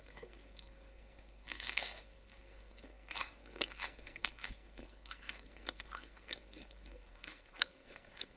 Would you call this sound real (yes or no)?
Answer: no